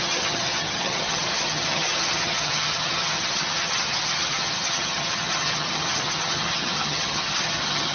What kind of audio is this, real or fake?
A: fake